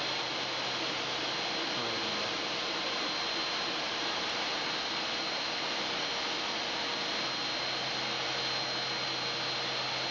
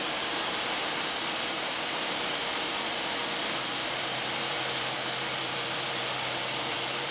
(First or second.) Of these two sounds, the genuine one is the first